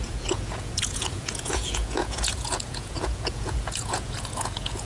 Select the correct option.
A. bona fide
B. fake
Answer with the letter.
B